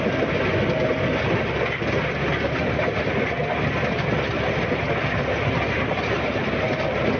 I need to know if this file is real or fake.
real